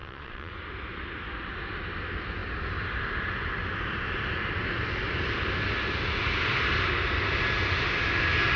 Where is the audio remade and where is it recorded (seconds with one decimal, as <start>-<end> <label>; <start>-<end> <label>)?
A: 0.0-0.5 remade; 0.5-8.6 recorded